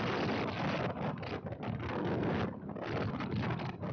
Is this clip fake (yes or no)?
no